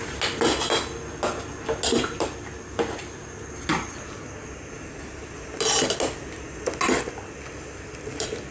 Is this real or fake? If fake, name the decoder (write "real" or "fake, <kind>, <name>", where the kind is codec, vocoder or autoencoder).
real